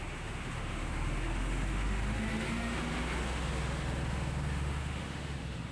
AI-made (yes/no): yes